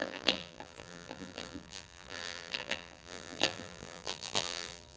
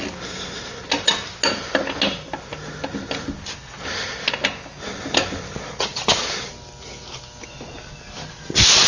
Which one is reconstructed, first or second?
first